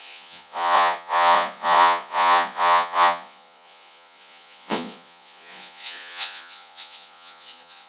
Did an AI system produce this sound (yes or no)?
yes